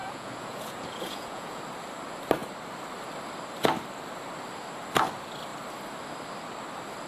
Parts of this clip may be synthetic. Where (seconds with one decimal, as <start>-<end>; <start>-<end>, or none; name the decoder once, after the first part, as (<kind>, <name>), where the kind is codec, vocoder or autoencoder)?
0.0-1.6 (vocoder, Vocos)